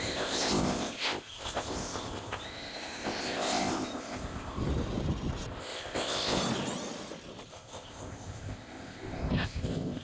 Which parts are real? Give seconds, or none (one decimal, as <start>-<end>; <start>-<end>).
4.6-5.5; 6.4-7.5